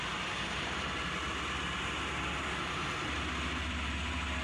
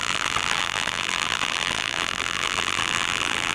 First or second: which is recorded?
first